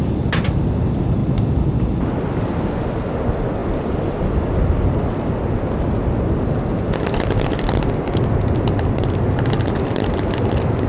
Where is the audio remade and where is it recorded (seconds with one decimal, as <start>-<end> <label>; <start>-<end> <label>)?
0.0-10.9 recorded

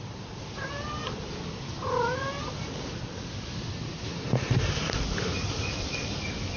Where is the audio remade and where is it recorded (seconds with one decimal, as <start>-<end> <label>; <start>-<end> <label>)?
0.0-6.6 recorded

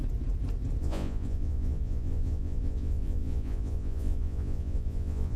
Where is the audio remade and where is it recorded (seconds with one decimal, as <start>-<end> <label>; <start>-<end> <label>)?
0.0-0.8 recorded; 0.8-5.4 remade

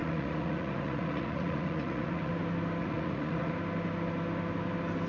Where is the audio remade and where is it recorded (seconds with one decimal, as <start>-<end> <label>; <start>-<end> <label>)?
0.0-2.3 remade; 2.3-2.8 recorded; 2.8-3.5 remade; 3.5-5.1 recorded

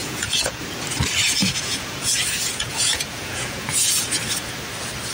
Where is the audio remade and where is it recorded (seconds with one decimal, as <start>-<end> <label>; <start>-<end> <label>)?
0.0-0.6 remade; 0.6-1.4 recorded; 1.4-3.9 remade; 3.9-5.1 recorded